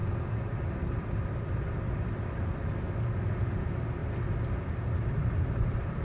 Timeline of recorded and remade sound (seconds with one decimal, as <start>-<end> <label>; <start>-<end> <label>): 0.0-3.4 recorded; 3.4-4.0 remade; 4.0-4.7 recorded; 4.7-6.0 remade